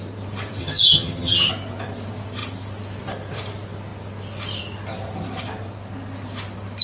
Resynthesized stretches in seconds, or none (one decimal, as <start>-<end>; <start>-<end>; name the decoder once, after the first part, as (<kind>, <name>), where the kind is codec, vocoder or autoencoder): 0.6-1.5 (vocoder, HiFi-GAN)